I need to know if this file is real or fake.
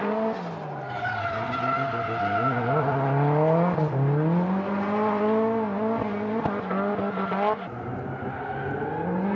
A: real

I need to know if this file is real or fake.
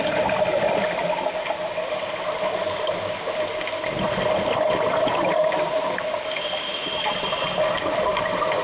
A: real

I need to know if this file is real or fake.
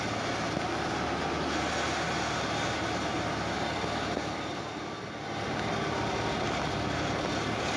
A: real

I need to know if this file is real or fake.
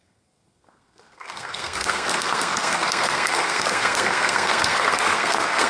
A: fake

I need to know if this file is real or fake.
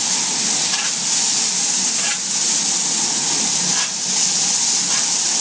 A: real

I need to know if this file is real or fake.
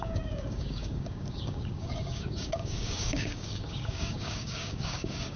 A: fake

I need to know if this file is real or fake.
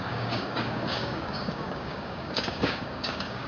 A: fake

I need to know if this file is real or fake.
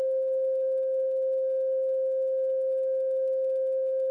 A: fake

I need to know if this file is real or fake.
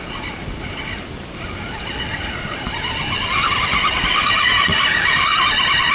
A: real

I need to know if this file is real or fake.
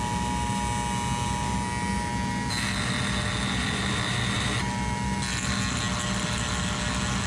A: real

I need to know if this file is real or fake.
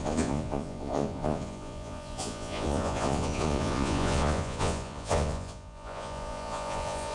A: fake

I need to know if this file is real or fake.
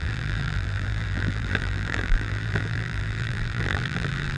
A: fake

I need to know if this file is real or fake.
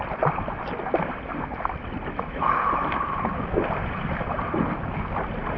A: real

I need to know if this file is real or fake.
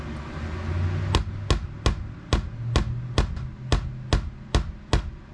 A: real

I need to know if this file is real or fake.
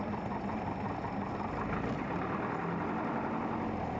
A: real